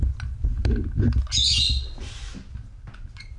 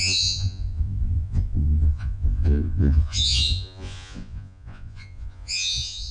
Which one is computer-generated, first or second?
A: second